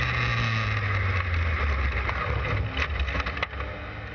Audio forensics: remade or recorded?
recorded